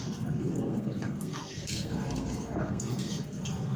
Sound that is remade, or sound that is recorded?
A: remade